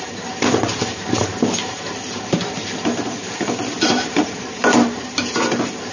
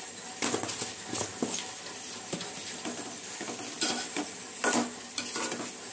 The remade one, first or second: first